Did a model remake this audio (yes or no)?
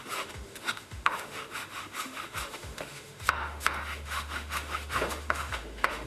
yes